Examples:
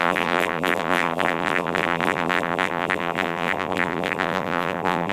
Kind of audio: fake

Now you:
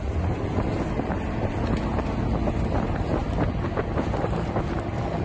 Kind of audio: real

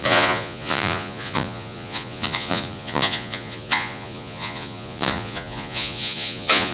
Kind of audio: fake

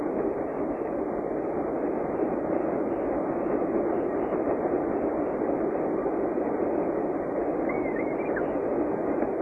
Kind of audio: real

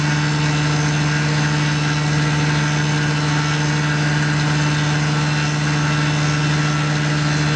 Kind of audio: real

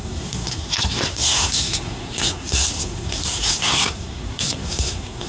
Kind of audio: fake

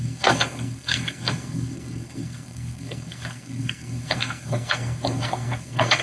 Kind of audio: fake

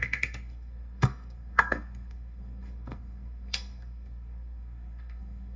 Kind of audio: fake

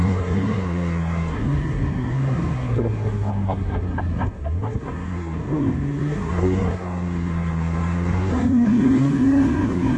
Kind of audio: fake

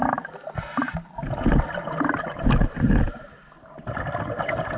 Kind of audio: real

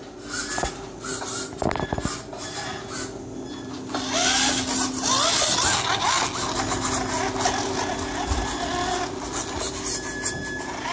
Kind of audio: real